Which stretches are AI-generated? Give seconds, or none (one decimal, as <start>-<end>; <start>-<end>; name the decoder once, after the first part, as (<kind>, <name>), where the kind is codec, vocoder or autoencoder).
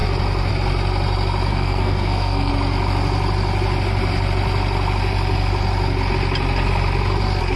1.5-2.5 (codec, SNAC)